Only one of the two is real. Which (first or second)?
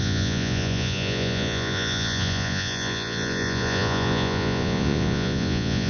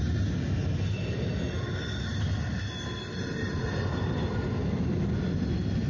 second